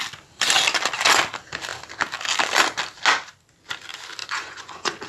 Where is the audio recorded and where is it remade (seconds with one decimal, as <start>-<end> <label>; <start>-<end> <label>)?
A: 0.0-4.2 recorded; 4.2-5.1 remade